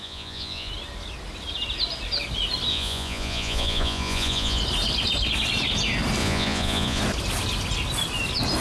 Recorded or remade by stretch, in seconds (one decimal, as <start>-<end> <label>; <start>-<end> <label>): 0.0-0.7 remade; 0.7-2.7 recorded; 2.7-4.6 remade; 4.6-6.2 recorded; 6.2-7.0 remade; 7.0-8.6 recorded